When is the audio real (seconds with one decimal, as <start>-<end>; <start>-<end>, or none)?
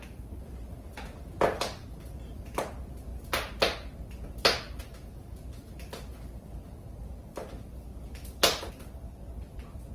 0.0-9.9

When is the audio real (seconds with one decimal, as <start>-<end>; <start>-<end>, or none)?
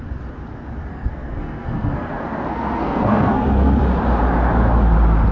0.0-0.9; 3.8-5.3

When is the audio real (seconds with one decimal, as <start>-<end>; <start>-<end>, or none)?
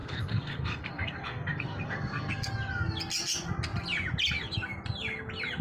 2.5-5.6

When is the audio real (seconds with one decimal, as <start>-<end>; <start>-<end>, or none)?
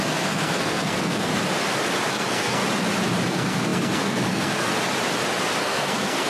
1.3-2.1; 2.6-3.3; 4.7-5.6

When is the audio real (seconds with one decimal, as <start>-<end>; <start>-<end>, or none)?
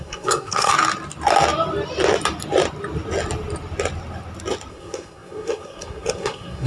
0.7-4.7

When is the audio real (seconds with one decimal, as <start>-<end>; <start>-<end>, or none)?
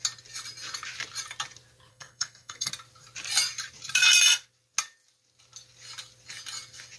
0.0-1.9; 2.7-7.0